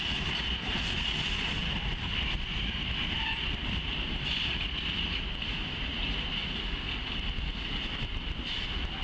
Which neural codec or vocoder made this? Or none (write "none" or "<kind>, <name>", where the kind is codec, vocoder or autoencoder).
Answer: none